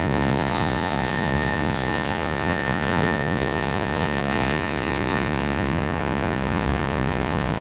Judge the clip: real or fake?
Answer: fake